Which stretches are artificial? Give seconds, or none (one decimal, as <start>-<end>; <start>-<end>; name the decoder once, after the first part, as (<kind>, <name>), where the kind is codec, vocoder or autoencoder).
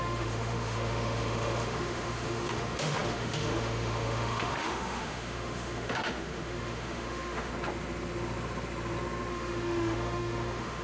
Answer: 0.0-7.5 (autoencoder, DAC-VAE); 9.3-10.8